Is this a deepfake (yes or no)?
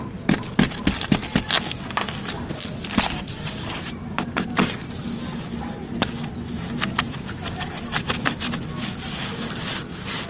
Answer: no